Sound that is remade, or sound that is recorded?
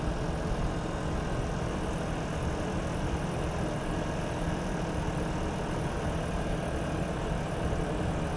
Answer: recorded